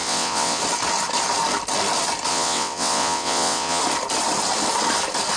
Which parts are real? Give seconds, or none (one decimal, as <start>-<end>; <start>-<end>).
0.6-2.3; 3.8-5.4